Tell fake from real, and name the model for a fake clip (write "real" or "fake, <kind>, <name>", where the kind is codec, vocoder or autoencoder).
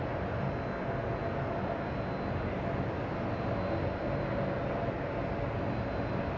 real